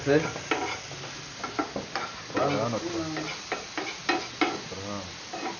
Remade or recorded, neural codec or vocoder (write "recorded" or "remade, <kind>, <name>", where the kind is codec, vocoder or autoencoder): recorded